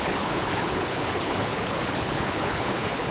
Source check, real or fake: fake